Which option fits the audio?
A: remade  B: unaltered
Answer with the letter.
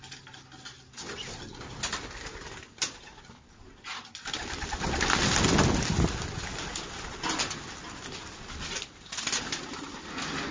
B